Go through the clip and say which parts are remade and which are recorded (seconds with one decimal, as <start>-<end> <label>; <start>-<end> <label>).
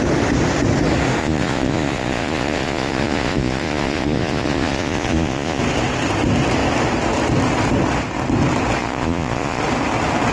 0.0-1.2 recorded; 1.2-5.6 remade; 5.6-8.8 recorded; 8.8-9.6 remade; 9.6-10.3 recorded